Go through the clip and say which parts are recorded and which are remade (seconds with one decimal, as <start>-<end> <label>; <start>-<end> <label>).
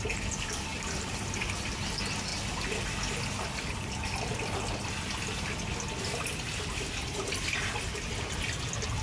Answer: 0.0-0.7 recorded; 0.7-1.3 remade; 1.3-9.0 recorded